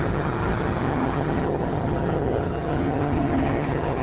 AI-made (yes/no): yes